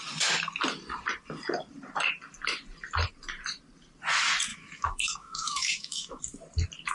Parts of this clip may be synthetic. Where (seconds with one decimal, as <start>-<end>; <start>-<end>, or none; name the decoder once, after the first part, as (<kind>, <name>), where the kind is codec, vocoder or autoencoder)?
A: 4.5-6.2 (autoencoder, DAC-VAE)

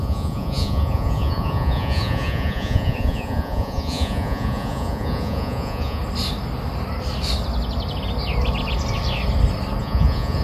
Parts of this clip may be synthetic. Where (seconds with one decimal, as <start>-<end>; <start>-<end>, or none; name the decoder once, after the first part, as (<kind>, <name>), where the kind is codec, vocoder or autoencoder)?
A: 0.0-6.0 (vocoder, Vocos); 9.8-10.4

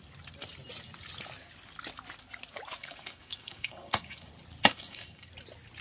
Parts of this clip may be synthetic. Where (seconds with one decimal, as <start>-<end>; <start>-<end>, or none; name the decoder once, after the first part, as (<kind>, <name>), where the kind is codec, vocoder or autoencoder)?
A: 2.8-4.3 (codec, DAC); 4.7-5.3

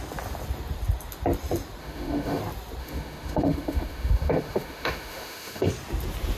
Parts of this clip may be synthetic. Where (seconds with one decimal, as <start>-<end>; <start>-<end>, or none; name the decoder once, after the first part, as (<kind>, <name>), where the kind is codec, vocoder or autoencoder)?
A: 1.8-2.4 (autoencoder, DAC-VAE); 2.8-5.7